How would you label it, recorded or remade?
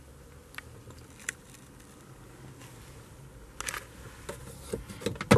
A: recorded